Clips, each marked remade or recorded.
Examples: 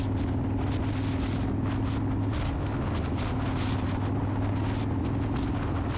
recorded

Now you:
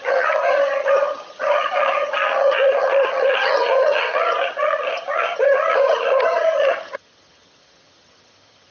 remade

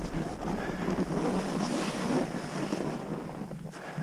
recorded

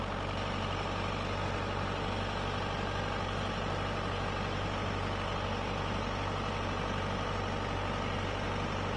recorded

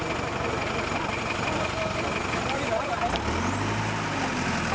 recorded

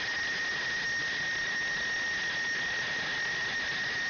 recorded